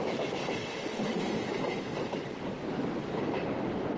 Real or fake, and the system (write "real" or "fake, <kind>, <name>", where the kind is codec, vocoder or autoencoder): real